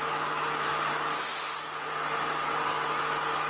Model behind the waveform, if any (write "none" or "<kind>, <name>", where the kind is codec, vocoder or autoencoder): none